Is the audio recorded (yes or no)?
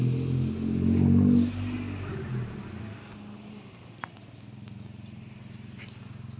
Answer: yes